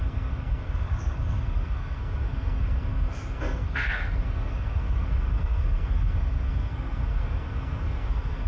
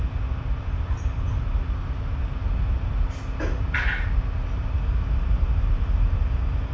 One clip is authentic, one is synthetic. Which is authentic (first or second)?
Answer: second